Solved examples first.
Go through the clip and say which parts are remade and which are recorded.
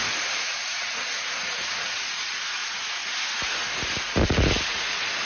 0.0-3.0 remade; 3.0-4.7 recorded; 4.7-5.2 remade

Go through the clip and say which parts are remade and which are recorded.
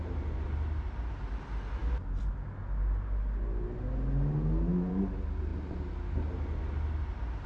0.0-7.5 recorded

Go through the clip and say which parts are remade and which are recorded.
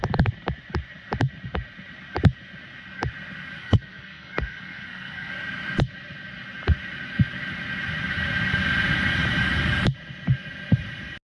0.0-3.6 recorded; 3.6-5.3 remade; 5.3-11.3 recorded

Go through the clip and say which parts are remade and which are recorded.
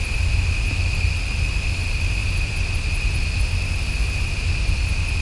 0.0-5.2 recorded